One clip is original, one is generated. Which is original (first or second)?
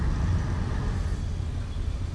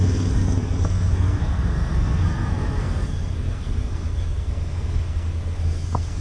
first